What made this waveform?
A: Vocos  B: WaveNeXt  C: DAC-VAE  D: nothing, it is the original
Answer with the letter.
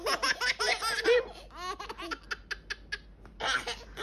D